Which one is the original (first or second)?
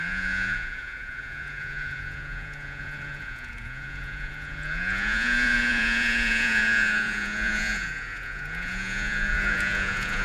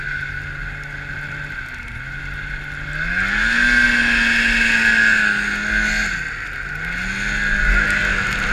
second